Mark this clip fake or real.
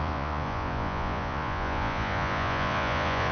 fake